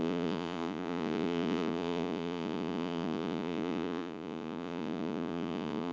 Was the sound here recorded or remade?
remade